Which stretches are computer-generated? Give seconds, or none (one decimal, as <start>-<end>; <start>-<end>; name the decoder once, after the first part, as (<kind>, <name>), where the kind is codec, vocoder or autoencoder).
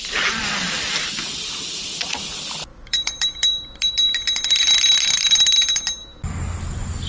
0.4-1.4 (vocoder, BigVGAN v2); 2.7-3.9